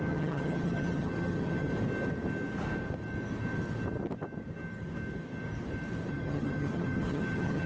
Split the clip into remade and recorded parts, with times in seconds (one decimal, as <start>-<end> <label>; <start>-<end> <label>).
0.0-1.7 remade; 1.7-6.1 recorded; 6.1-7.7 remade